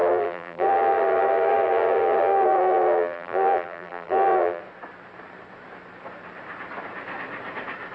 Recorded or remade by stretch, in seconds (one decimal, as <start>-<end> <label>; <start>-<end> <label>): 0.0-4.6 remade; 4.6-7.9 recorded